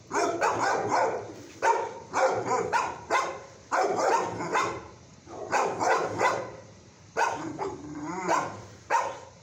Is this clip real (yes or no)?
no